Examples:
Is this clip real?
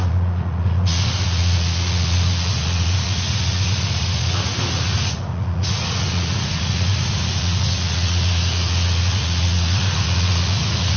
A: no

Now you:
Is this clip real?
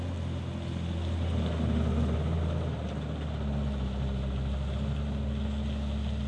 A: yes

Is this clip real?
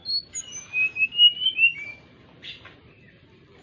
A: yes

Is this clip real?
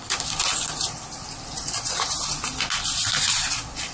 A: yes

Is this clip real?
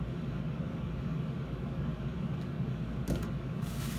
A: no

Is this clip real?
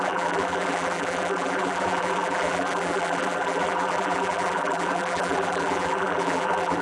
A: no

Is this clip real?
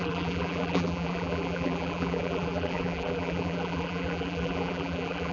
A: no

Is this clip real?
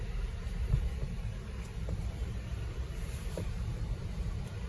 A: no